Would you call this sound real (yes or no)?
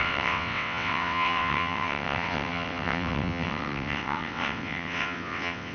no